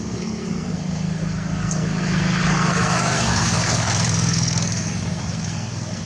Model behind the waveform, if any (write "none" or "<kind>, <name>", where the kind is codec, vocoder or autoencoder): codec, SNAC